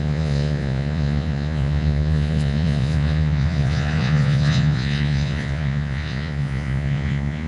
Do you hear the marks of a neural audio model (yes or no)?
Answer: yes